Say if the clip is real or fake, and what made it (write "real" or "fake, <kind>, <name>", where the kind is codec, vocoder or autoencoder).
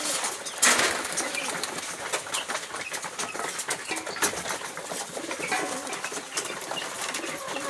real